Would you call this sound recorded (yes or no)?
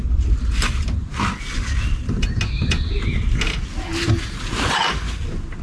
yes